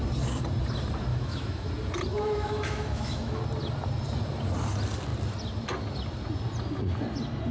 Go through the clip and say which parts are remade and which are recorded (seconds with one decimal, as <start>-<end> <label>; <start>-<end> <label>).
0.0-1.1 recorded; 1.1-1.7 remade; 1.7-2.1 recorded; 2.1-3.4 remade; 3.4-7.5 recorded